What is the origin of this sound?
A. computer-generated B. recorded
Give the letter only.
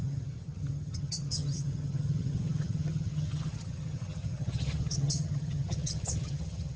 A